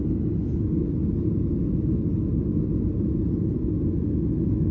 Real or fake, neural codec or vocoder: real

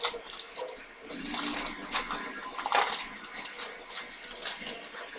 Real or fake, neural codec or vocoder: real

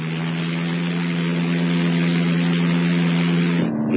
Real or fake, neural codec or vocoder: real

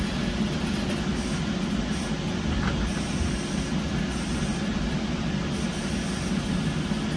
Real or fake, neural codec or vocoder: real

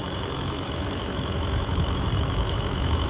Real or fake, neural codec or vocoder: fake, autoencoder, DAC-VAE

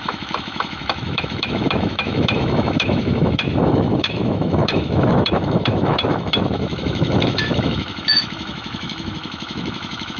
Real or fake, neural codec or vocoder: fake, autoencoder, DAC-VAE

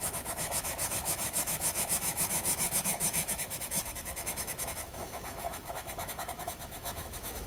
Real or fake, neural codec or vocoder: fake, autoencoder, DAC-VAE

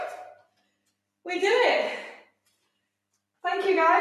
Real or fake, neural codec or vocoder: real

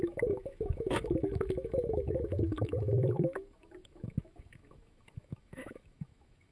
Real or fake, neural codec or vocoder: fake, autoencoder, DAC-VAE